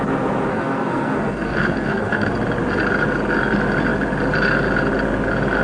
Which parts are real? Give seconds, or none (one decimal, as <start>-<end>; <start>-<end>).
0.0-0.5; 2.3-5.6